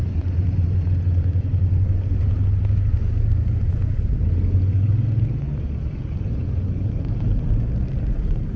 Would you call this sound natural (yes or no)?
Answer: yes